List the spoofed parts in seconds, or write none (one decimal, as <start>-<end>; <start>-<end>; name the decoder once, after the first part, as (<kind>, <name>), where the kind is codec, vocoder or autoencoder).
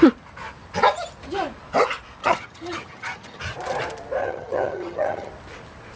2.2-3.4 (vocoder, HiFi-GAN); 4.2-5.3